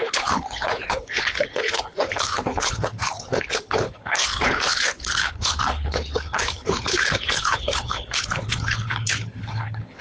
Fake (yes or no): yes